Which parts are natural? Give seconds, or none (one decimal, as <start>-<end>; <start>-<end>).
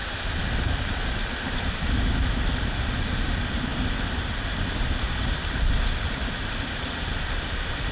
none